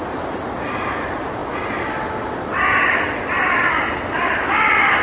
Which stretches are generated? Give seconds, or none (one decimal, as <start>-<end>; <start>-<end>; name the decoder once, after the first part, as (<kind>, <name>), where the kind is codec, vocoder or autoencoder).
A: none